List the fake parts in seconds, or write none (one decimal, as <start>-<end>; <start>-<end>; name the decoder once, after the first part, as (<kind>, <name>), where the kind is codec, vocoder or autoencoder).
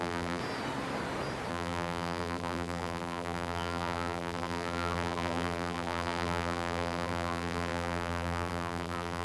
0.0-0.4 (vocoder, BigVGAN v2); 1.5-9.2